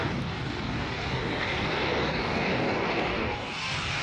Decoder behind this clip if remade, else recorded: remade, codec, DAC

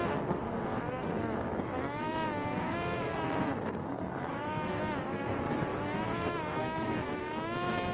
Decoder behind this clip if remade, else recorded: remade, codec, SNAC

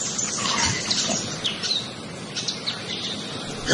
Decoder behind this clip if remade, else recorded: recorded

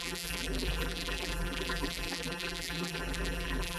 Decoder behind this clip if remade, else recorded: remade, vocoder, BigVGAN v2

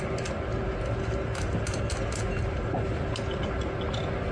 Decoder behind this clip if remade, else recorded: recorded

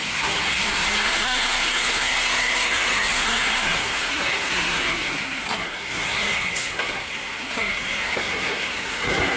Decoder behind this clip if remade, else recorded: remade, codec, SNAC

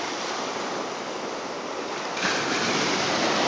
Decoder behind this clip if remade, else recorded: recorded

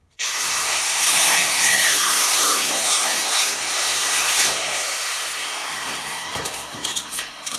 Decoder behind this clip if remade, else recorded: remade, codec, SNAC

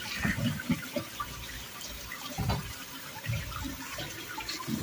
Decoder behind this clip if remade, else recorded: remade, vocoder, BigVGAN v2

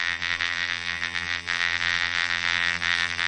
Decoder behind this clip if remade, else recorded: remade, vocoder, BigVGAN v2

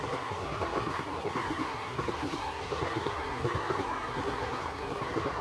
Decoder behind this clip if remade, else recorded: remade, codec, SNAC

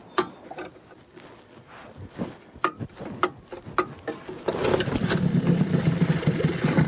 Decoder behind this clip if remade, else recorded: recorded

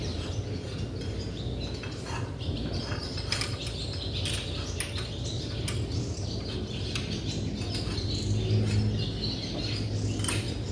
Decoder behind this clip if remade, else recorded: recorded